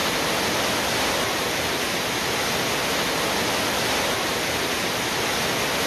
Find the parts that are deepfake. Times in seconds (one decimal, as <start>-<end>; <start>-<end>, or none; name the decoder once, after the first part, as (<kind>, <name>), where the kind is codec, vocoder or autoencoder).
none